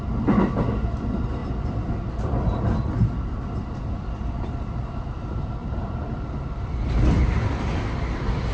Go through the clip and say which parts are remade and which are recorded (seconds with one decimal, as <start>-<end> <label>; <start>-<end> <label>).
0.0-5.6 recorded; 5.6-6.4 remade; 6.4-8.5 recorded